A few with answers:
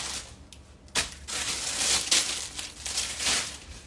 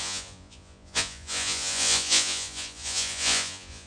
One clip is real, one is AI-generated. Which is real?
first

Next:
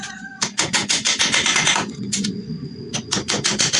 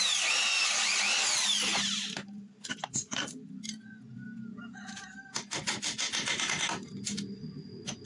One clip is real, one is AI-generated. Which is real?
second